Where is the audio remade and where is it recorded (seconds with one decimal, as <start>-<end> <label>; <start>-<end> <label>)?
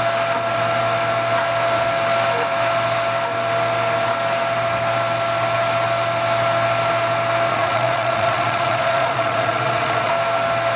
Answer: 0.0-7.5 recorded; 7.5-10.1 remade; 10.1-10.8 recorded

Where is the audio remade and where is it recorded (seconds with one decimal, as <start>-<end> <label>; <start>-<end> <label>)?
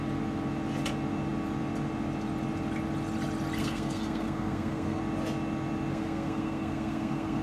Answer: 0.0-3.6 recorded; 3.6-5.0 remade; 5.0-5.9 recorded; 5.9-7.4 remade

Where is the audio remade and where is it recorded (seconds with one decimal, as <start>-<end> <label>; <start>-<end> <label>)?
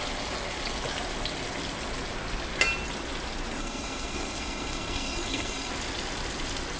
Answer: 0.0-3.6 recorded; 3.6-5.7 remade; 5.7-6.8 recorded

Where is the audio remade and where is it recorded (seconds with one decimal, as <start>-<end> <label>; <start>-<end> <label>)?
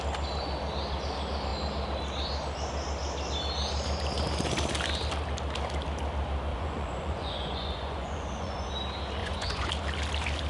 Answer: 0.0-6.5 recorded; 6.5-8.7 remade; 8.7-9.2 recorded; 9.2-9.7 remade; 9.7-10.5 recorded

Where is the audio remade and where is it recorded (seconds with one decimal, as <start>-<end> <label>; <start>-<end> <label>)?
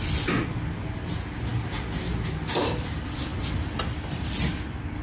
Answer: 0.0-5.0 recorded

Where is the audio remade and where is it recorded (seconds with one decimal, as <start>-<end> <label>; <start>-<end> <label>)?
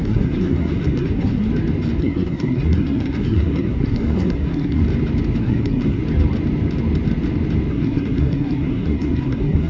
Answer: 0.0-1.5 remade; 1.5-2.0 recorded; 2.0-4.8 remade; 4.8-5.4 recorded; 5.4-6.0 remade; 6.0-7.7 recorded; 7.7-9.7 remade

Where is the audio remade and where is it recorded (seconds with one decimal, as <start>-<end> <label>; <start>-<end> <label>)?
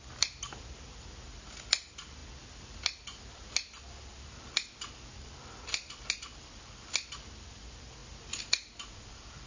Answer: 0.0-9.5 recorded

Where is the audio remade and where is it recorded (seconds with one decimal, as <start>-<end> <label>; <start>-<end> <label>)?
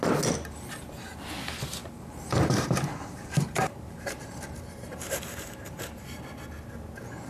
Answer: 0.0-1.8 recorded; 1.8-6.2 remade; 6.2-7.3 recorded